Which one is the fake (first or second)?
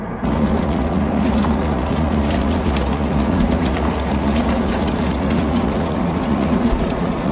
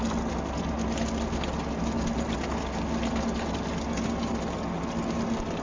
first